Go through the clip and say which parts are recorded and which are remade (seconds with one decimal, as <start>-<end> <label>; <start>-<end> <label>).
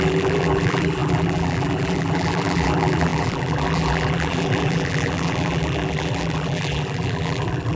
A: 0.0-7.8 remade